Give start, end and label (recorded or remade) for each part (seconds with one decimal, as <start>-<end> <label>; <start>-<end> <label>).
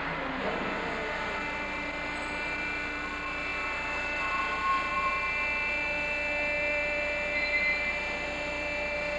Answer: 0.0-9.2 recorded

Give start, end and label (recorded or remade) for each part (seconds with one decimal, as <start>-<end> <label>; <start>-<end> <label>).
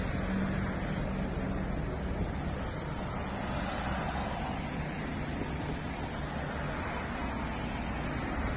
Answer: 0.0-8.6 recorded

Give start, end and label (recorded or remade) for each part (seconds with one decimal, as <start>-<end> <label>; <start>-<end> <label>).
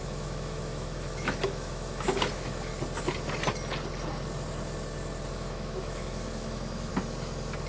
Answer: 0.0-2.7 remade; 2.7-5.3 recorded; 5.3-6.9 remade; 6.9-7.7 recorded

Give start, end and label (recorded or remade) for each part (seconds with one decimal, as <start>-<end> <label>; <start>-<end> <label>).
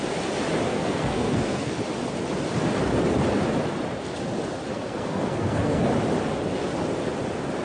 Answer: 0.0-0.7 recorded; 0.7-1.7 remade; 1.7-4.7 recorded; 4.7-5.9 remade; 5.9-7.6 recorded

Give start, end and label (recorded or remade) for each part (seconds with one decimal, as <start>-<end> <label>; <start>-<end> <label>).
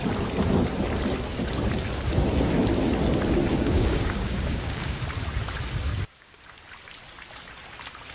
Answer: 0.0-3.5 recorded; 3.5-5.0 remade; 5.0-5.9 recorded; 5.9-6.4 remade; 6.4-8.1 recorded